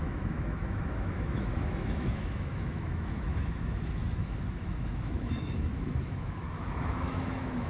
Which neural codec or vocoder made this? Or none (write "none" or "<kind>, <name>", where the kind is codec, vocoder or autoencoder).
autoencoder, DAC-VAE